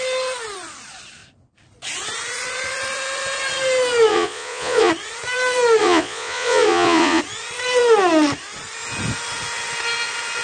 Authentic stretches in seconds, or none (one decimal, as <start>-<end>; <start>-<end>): 0.0-4.1; 4.9-5.8; 7.2-10.4

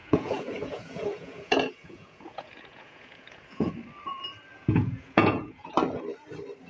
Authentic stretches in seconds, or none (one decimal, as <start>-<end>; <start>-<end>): 3.7-4.5; 5.7-6.7